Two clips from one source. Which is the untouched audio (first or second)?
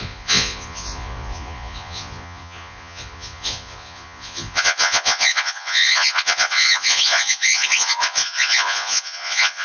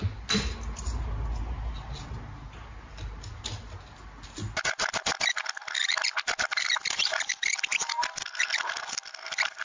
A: second